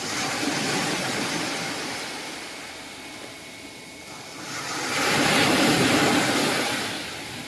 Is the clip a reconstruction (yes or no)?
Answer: no